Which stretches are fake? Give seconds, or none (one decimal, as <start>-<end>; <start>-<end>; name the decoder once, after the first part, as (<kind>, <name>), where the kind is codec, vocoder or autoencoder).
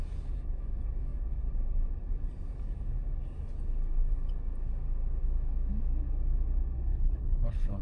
6.9-7.8 (codec, HILCodec)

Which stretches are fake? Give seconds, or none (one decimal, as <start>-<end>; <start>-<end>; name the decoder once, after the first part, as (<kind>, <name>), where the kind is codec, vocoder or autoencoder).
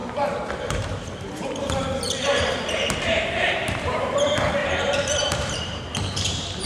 0.0-4.0 (vocoder, BigVGAN v2); 4.6-5.8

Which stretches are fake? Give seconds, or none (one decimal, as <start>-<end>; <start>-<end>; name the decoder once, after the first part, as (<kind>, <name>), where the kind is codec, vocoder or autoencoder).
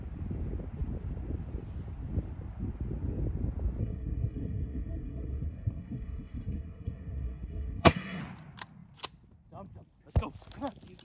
3.8-8.2 (codec, SNAC)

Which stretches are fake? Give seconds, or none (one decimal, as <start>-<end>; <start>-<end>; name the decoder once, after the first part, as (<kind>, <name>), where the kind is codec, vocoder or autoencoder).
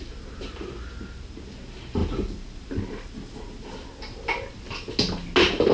none